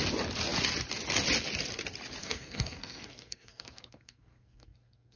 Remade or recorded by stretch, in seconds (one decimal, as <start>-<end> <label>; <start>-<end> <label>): 0.0-2.2 recorded; 2.2-5.2 remade